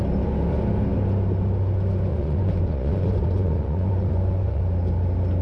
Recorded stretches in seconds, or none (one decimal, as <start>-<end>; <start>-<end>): 0.0-2.1; 4.6-5.4